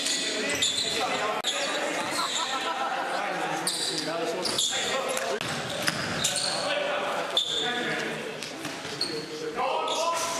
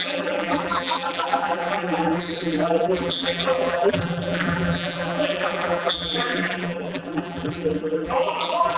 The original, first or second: first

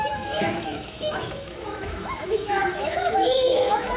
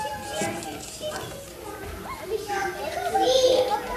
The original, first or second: second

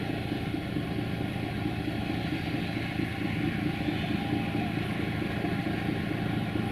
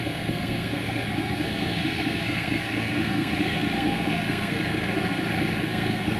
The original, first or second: first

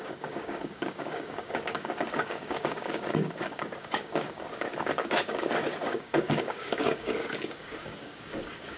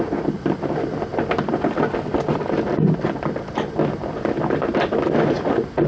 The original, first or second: second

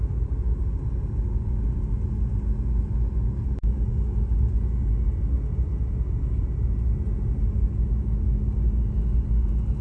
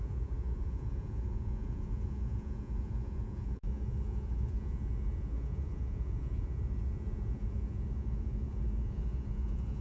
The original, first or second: first